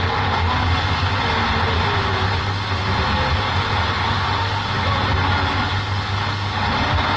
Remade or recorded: recorded